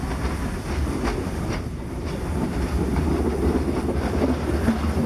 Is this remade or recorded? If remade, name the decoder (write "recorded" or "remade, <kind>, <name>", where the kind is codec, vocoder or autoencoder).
remade, vocoder, BigVGAN v2